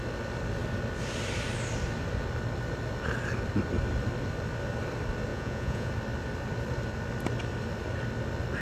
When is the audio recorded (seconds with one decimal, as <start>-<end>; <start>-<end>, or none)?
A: 0.0-5.3; 5.9-8.6

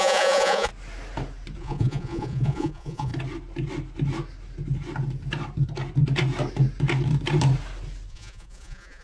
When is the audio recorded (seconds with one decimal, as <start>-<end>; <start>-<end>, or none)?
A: 0.7-1.6; 3.1-8.1

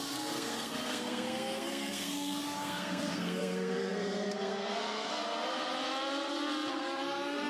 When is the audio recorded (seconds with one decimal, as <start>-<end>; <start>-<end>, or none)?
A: 5.7-6.7

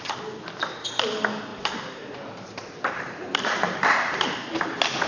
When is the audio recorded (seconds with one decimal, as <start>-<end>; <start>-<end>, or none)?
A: 0.0-1.5; 4.6-5.1

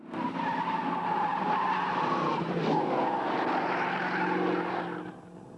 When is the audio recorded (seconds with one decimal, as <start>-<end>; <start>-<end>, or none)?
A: 0.0-5.6

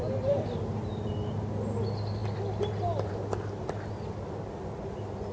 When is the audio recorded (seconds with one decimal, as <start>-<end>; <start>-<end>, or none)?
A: 0.0-5.3